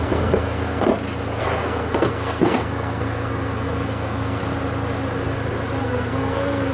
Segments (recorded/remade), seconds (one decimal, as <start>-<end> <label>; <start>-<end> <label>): 0.0-0.9 remade; 0.9-1.4 recorded; 1.4-4.4 remade; 4.4-5.8 recorded; 5.8-6.7 remade